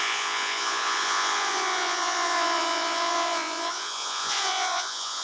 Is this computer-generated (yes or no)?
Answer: yes